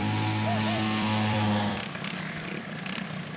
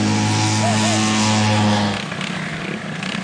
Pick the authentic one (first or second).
second